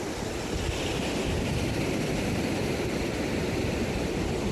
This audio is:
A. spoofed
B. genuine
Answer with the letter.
B